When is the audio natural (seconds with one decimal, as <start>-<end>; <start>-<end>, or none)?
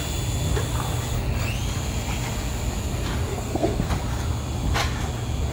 0.0-3.3; 3.9-5.5